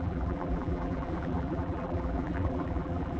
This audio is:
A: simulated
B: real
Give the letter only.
A